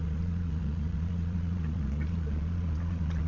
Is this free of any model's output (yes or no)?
no